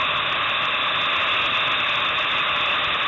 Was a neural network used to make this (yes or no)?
no